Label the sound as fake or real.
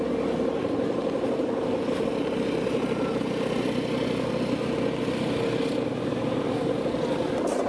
real